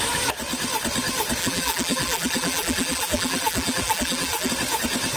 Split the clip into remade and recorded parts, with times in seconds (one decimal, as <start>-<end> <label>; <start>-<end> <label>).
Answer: 0.0-1.4 recorded; 1.4-4.5 remade; 4.5-5.2 recorded